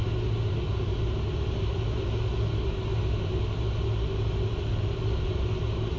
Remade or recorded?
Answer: recorded